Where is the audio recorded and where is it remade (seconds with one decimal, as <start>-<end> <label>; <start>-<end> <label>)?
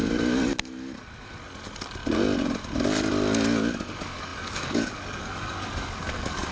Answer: 0.0-3.9 recorded; 3.9-6.5 remade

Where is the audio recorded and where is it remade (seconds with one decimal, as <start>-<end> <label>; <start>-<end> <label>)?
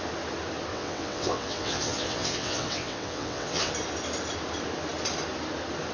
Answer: 0.0-0.7 recorded; 0.7-3.7 remade; 3.7-5.9 recorded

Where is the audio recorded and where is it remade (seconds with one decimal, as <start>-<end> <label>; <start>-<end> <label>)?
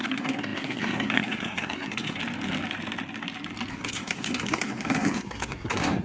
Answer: 0.0-2.2 remade; 2.2-3.7 recorded; 3.7-6.0 remade